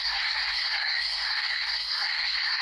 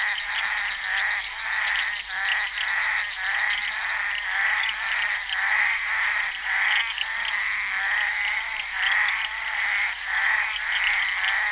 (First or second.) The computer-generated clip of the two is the first